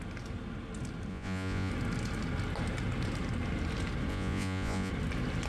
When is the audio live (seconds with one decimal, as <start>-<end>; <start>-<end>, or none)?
0.0-1.1; 1.7-4.1; 4.9-5.5